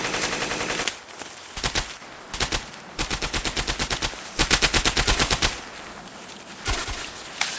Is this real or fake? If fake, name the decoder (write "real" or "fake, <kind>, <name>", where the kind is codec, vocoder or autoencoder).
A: real